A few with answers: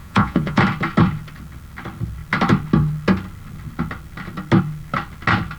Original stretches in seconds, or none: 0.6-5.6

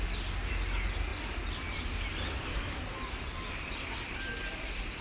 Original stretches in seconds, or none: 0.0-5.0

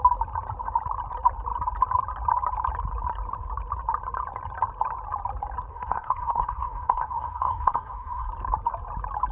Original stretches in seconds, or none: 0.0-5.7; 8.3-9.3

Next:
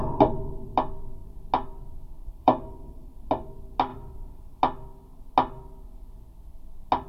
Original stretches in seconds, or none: 0.0-2.2; 3.1-3.9; 4.6-7.1

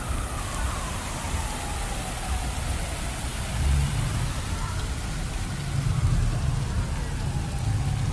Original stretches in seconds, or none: 0.0-8.1